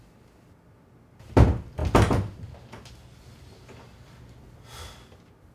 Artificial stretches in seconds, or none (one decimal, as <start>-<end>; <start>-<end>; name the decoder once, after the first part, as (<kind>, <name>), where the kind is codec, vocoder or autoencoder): none

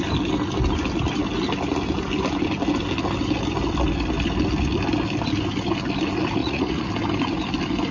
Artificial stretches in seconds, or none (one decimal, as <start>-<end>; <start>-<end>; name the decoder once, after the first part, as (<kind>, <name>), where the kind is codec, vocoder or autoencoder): 6.4-6.9 (vocoder, Vocos)